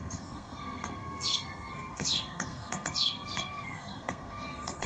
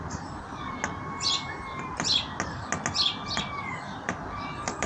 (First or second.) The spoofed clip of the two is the first